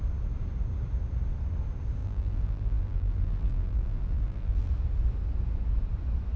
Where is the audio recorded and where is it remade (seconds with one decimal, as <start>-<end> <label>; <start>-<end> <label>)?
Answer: 0.0-2.0 recorded; 2.0-4.7 remade; 4.7-6.4 recorded